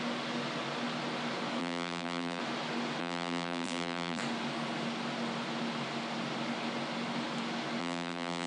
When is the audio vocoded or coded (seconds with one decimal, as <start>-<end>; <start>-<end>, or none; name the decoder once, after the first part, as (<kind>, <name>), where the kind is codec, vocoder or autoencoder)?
1.6-2.4 (vocoder, BigVGAN v2); 3.0-4.2; 7.8-8.5